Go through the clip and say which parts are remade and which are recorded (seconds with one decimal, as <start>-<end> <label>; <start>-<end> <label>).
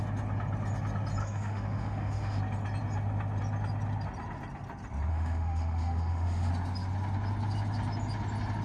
0.0-1.2 recorded; 1.2-2.4 remade; 2.4-5.1 recorded; 5.1-6.5 remade; 6.5-8.6 recorded